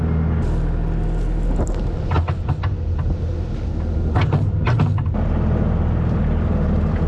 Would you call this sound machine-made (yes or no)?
no